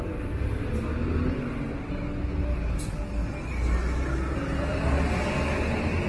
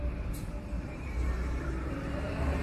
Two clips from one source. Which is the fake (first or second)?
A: second